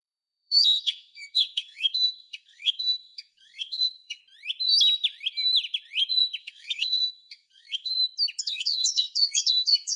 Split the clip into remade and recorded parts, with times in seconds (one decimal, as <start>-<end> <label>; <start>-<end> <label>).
0.0-4.2 remade; 4.2-6.4 recorded; 6.4-7.9 remade; 7.9-8.4 recorded; 8.4-10.0 remade